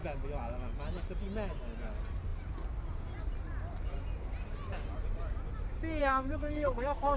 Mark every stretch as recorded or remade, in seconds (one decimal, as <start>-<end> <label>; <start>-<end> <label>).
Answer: 0.0-6.0 recorded; 6.0-7.2 remade